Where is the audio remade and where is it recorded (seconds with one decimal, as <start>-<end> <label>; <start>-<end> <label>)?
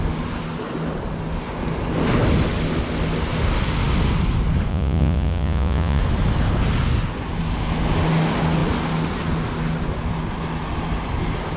0.0-4.7 recorded; 4.7-6.0 remade; 6.0-11.6 recorded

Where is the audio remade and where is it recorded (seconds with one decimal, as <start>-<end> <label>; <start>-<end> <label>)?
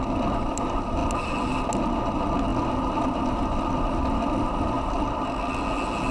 0.0-6.1 recorded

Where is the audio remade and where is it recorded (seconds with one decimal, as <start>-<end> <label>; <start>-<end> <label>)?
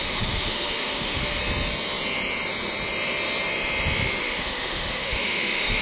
0.0-1.4 remade; 1.4-4.2 recorded; 4.2-5.8 remade